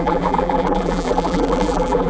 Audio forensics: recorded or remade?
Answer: remade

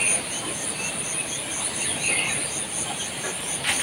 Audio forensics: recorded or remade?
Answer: recorded